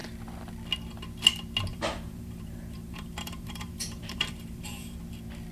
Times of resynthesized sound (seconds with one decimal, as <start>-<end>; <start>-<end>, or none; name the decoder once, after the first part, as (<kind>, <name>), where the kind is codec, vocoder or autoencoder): 1.7-5.0 (vocoder, BigVGAN v2)